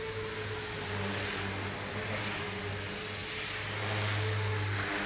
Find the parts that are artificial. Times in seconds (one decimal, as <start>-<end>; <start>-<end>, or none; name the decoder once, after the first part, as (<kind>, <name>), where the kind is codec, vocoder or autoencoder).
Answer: none